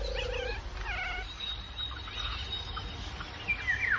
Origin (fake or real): real